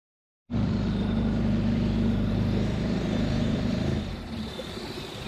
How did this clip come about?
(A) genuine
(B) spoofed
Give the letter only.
B